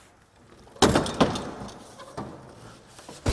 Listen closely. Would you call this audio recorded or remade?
recorded